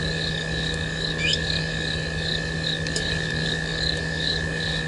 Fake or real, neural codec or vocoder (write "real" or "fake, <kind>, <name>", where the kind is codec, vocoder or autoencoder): fake, codec, DAC